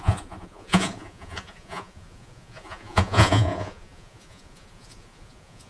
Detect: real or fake fake